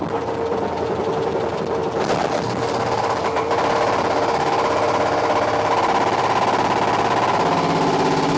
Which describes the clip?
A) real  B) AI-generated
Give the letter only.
A